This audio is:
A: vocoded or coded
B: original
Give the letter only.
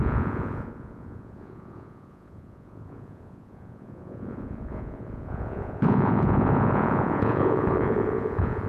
A